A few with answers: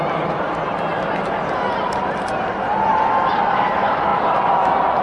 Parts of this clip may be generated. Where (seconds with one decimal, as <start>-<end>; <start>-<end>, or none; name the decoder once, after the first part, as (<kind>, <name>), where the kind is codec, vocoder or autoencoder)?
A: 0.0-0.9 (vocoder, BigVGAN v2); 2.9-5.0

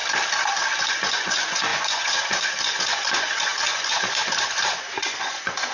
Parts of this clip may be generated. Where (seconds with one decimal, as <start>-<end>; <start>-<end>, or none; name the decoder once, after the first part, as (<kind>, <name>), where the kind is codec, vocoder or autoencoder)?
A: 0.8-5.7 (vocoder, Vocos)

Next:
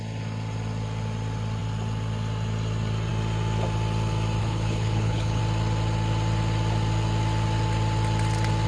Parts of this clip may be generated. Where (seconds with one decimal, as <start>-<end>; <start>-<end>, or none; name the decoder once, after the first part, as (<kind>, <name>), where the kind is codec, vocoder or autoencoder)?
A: 4.4-5.4 (codec, HILCodec)